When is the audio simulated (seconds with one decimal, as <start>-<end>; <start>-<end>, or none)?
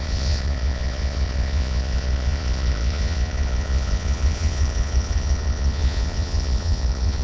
0.0-7.2